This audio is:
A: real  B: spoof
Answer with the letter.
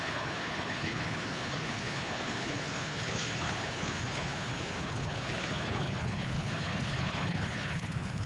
B